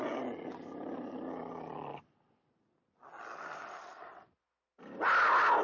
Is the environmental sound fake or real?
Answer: real